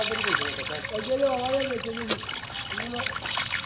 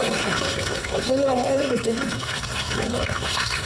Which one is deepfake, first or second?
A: second